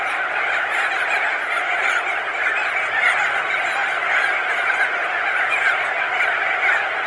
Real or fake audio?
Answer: real